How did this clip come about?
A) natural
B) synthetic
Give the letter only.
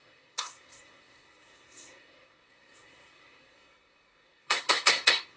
B